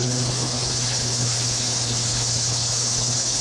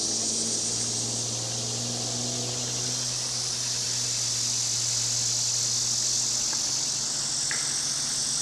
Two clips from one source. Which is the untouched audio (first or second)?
second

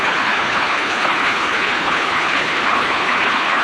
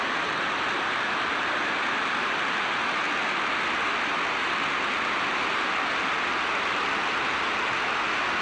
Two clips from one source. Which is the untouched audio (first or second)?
second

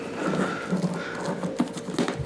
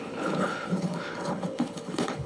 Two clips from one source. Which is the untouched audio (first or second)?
first